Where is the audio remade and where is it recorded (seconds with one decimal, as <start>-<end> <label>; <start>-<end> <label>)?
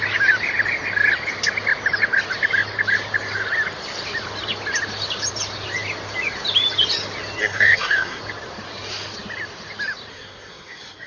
0.0-7.4 recorded; 7.4-8.2 remade; 8.2-10.1 recorded; 10.1-11.1 remade